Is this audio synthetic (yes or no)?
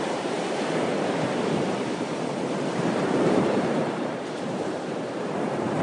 yes